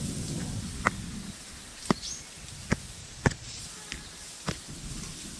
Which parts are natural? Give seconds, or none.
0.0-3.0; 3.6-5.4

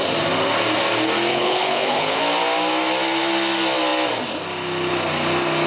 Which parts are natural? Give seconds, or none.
0.0-1.3; 2.2-5.7

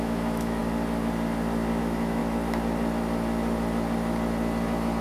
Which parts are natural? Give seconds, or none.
0.6-1.8; 2.2-5.0

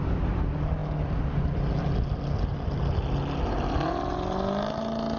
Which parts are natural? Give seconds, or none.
0.0-5.2